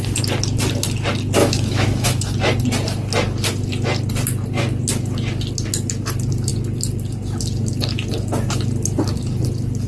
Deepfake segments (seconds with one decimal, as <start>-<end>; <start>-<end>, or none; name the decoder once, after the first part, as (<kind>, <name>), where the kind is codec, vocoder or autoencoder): 1.4-2.2 (autoencoder, DAC-VAE)